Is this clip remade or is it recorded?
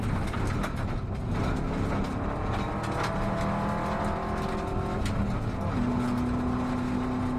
recorded